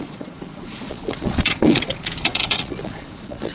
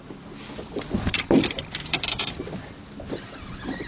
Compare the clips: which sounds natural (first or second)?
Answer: second